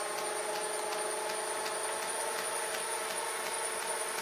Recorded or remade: recorded